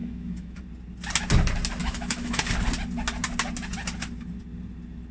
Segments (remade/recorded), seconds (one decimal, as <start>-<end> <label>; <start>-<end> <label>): 0.0-0.6 remade; 0.6-1.8 recorded; 1.8-2.4 remade; 2.4-5.1 recorded